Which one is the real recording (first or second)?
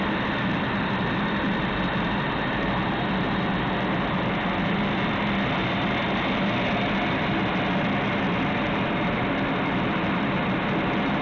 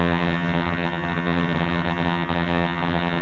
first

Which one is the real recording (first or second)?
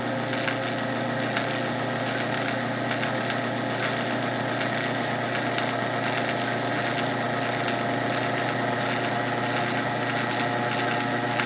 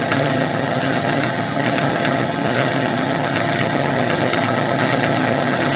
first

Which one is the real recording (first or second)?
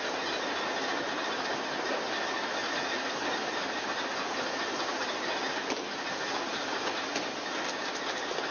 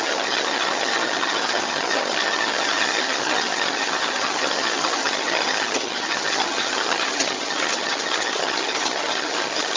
first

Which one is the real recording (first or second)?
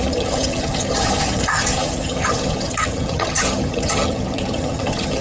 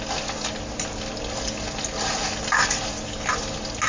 second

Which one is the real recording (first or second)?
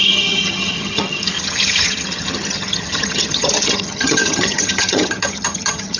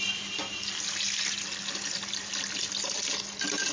second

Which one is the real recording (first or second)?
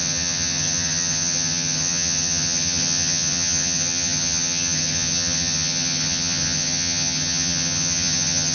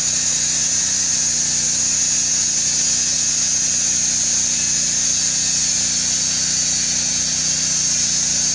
second